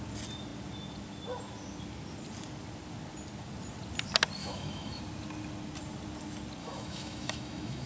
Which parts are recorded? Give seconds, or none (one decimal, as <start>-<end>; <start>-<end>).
0.0-4.4; 5.0-6.6